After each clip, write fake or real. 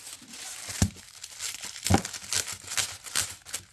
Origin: real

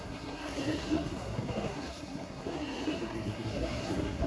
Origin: fake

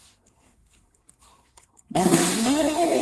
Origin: fake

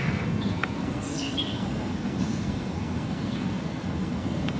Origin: fake